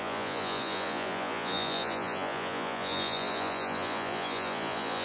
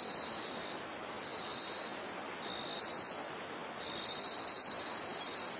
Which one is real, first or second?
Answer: second